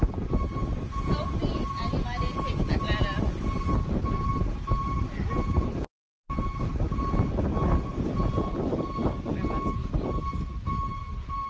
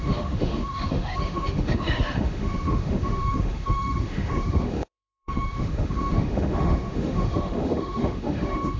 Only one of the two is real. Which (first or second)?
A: first